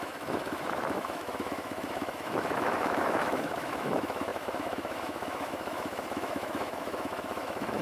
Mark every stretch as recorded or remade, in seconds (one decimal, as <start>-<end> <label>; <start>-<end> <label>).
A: 0.0-7.8 remade